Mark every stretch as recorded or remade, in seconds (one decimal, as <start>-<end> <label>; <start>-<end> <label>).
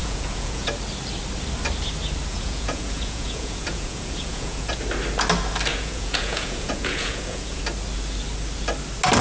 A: 0.0-0.7 remade; 0.7-2.3 recorded; 2.3-4.8 remade; 4.8-5.7 recorded; 5.7-7.6 remade; 7.6-9.2 recorded